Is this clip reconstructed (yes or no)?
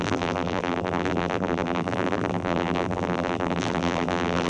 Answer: yes